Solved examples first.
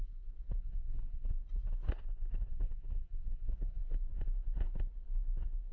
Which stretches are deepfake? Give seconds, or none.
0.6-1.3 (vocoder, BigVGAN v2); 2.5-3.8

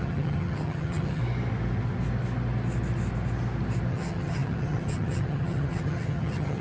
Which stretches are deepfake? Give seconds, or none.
0.0-1.2 (vocoder, HiFi-GAN); 3.9-6.6

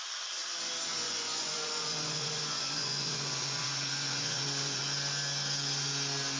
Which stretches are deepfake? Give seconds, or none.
1.0-4.8 (vocoder, Vocos)

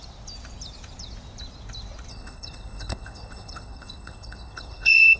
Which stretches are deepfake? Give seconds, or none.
2.1-5.2 (codec, HILCodec)

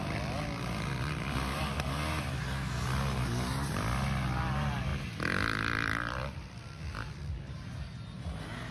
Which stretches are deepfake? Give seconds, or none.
none